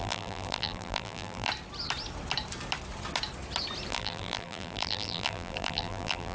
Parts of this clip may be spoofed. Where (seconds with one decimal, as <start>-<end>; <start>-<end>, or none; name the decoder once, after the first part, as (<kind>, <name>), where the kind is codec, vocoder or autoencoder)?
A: 0.0-1.5 (vocoder, BigVGAN v2); 3.9-6.3